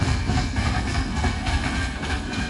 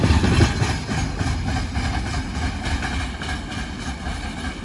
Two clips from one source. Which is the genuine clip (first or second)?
second